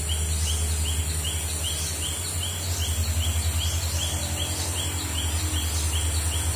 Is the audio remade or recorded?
recorded